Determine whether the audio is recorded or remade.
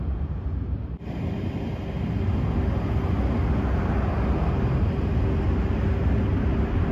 recorded